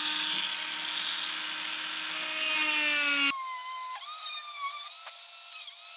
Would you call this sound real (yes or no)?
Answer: yes